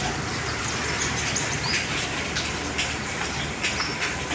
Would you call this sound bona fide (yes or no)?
yes